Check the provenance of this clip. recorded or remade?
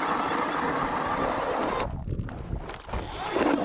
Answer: recorded